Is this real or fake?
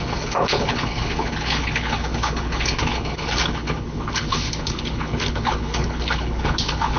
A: fake